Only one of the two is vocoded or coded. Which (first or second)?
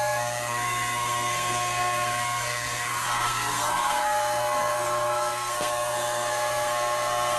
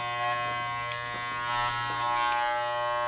first